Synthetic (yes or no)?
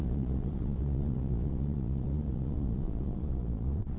yes